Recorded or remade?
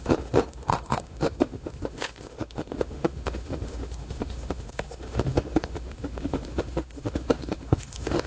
remade